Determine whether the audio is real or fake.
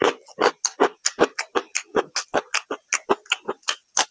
real